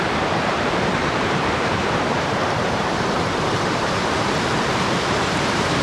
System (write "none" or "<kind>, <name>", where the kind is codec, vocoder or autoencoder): vocoder, BigVGAN v2